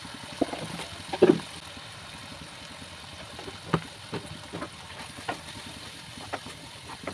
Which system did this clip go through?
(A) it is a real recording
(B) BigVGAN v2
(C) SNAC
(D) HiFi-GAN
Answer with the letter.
A